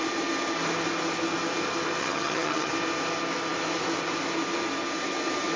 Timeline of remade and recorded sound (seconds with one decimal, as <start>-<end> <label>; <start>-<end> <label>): 0.0-2.0 recorded; 2.0-2.7 remade; 2.7-5.6 recorded